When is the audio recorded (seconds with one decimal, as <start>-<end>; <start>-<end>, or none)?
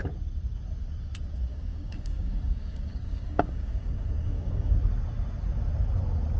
0.0-1.5; 4.7-6.4